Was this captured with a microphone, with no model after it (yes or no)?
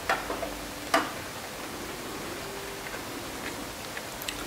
yes